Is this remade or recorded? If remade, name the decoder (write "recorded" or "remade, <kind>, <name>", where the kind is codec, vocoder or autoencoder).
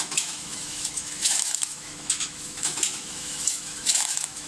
remade, autoencoder, DAC-VAE